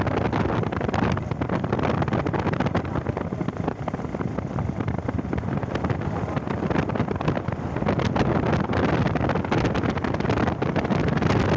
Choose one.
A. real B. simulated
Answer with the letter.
A